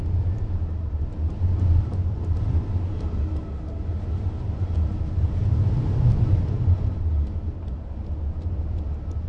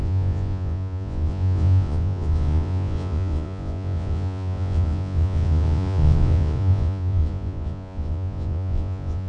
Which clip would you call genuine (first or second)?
first